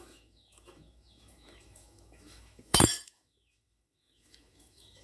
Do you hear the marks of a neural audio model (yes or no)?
yes